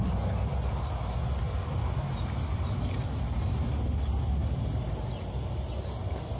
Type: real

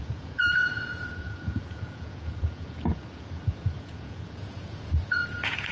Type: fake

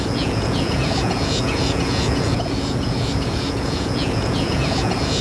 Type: fake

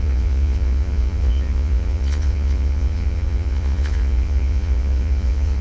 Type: fake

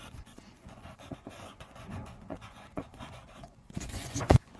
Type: fake